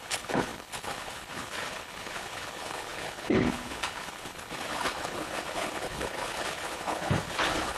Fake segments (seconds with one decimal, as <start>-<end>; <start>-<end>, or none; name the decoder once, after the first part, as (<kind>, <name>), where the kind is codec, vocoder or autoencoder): 0.0-7.8 (codec, HILCodec)